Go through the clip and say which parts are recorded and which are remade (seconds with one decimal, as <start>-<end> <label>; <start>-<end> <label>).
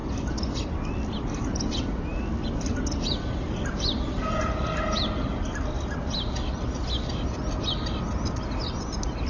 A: 0.0-9.3 recorded